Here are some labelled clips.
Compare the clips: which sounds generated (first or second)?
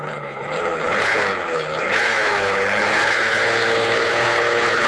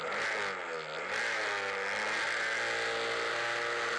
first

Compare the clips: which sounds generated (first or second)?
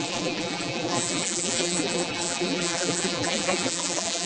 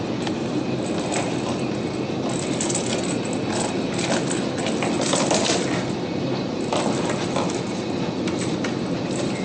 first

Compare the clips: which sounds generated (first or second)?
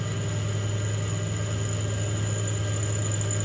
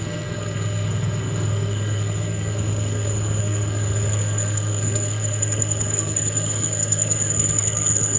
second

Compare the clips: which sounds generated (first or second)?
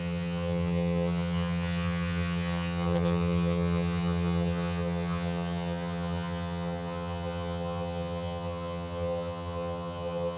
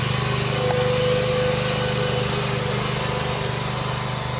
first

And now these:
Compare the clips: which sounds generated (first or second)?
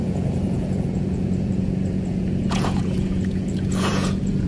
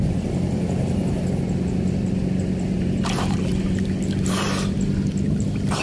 first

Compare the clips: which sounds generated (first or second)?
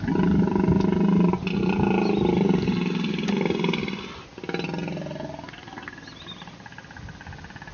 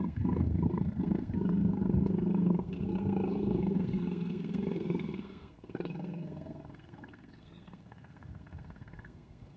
second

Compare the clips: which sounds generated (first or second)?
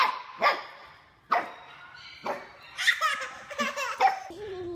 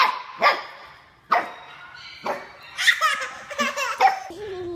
first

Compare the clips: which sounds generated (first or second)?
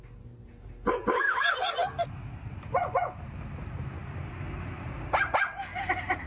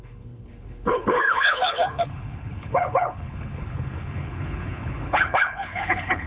second